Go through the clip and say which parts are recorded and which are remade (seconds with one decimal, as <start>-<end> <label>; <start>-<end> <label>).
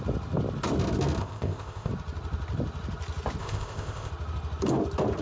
0.0-1.2 recorded; 1.2-1.9 remade; 1.9-3.4 recorded; 3.4-4.1 remade; 4.1-5.2 recorded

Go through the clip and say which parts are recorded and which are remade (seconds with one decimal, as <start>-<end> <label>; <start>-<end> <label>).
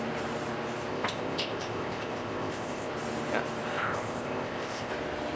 0.0-0.9 recorded; 0.9-2.9 remade; 2.9-3.7 recorded; 3.7-4.9 remade; 4.9-5.4 recorded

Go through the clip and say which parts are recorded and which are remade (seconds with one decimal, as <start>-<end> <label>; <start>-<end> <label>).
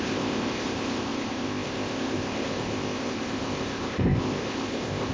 0.0-5.1 remade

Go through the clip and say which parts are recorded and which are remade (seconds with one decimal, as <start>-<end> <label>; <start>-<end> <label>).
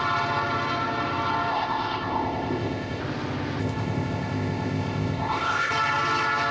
0.0-1.5 recorded; 1.5-3.0 remade; 3.0-3.6 recorded; 3.6-5.7 remade; 5.7-6.5 recorded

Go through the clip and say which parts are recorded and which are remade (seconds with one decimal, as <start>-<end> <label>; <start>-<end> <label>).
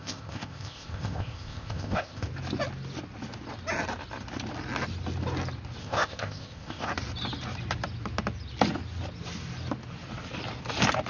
0.0-2.3 remade; 2.3-5.8 recorded; 5.8-6.9 remade; 6.9-11.1 recorded